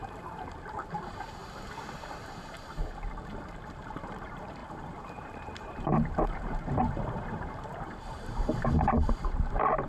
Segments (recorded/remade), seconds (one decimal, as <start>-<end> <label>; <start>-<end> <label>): 0.0-9.9 remade